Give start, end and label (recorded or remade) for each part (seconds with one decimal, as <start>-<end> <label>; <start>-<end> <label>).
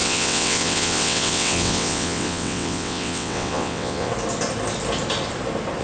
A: 0.0-4.1 remade; 4.1-5.8 recorded